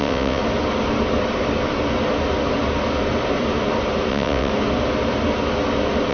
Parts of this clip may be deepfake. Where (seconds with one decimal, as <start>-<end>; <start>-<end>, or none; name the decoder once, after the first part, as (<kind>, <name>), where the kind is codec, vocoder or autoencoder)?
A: 0.0-0.4 (vocoder, WaveNeXt); 4.1-4.5